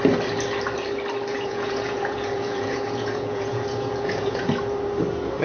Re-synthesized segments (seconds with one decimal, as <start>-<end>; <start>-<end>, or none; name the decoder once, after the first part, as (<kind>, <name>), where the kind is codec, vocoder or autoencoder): 1.3-4.5 (vocoder, Vocos)